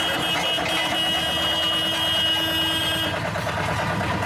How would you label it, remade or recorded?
recorded